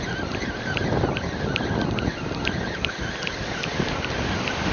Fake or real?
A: real